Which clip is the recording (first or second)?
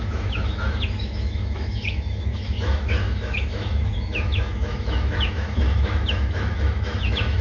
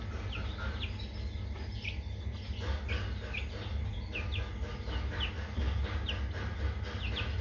second